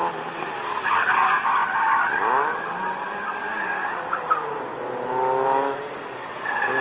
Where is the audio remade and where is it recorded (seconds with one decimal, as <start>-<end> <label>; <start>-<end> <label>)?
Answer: 0.0-6.8 recorded